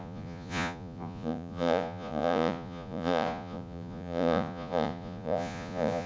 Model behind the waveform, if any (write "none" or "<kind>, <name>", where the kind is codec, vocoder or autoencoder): vocoder, Vocos